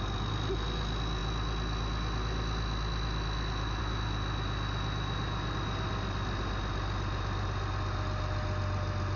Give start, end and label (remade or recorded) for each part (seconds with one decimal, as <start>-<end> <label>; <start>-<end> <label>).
0.0-9.2 recorded